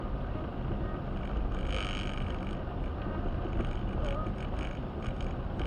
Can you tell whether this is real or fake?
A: real